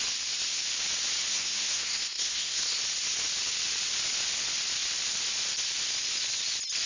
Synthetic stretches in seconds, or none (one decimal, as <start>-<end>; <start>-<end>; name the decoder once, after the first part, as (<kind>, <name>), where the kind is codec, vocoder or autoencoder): 1.3-2.8 (codec, SNAC)